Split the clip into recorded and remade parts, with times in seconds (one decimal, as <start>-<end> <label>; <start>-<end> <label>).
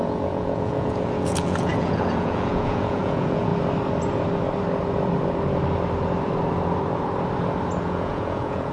0.0-3.5 remade; 3.5-7.8 recorded; 7.8-8.7 remade